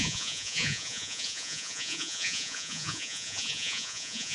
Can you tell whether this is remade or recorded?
remade